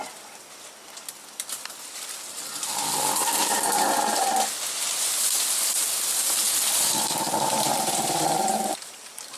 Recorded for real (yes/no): yes